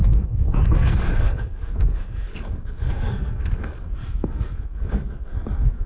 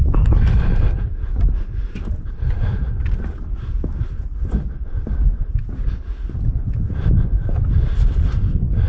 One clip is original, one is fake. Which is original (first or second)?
second